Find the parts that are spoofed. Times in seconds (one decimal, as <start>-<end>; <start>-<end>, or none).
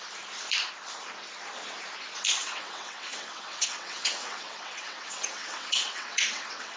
2.4-6.8